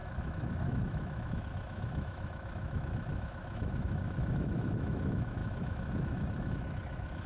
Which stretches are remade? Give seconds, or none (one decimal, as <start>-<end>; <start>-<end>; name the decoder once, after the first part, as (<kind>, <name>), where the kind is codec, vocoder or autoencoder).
0.0-7.3 (autoencoder, DAC-VAE)